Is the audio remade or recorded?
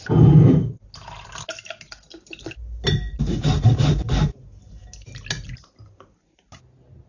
recorded